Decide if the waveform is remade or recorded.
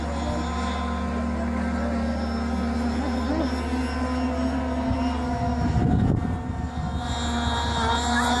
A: recorded